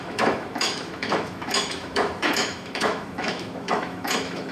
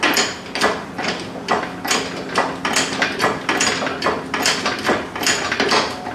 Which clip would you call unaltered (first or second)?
second